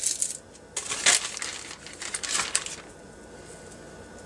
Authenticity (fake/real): real